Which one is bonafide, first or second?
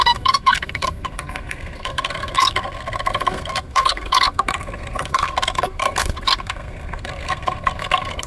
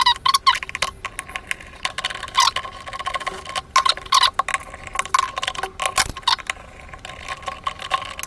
second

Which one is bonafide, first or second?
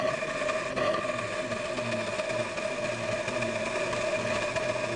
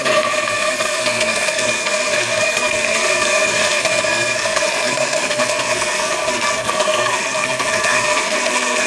first